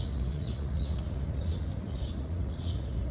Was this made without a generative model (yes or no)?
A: no